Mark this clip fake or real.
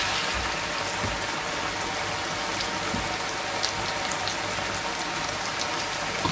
real